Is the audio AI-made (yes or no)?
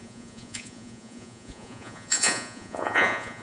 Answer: yes